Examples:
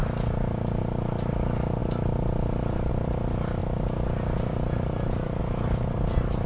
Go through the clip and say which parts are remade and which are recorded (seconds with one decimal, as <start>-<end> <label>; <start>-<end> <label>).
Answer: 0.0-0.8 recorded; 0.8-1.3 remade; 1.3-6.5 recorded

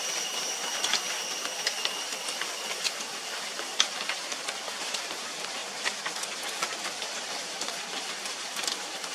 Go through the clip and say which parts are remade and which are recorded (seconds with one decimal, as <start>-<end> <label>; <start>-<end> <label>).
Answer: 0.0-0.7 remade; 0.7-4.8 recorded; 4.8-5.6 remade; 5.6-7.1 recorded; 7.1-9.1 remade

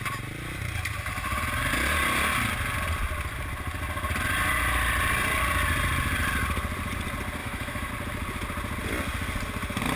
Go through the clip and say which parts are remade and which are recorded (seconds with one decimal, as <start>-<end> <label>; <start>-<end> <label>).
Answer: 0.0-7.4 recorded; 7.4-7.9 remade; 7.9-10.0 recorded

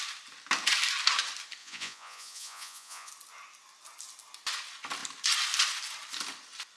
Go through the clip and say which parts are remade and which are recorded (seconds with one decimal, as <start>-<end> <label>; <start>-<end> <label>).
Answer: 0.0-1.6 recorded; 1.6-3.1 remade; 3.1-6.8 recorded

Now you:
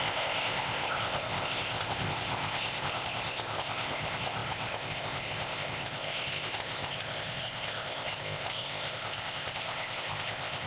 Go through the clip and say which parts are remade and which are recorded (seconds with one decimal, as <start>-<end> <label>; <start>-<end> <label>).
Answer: 0.0-10.7 remade

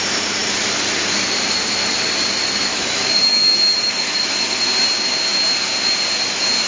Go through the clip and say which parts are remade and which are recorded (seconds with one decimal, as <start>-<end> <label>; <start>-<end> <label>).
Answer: 0.0-2.7 recorded; 2.7-4.6 remade; 4.6-6.7 recorded